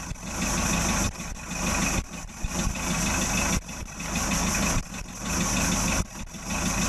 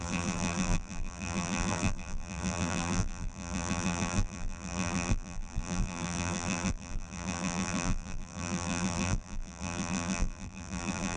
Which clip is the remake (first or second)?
second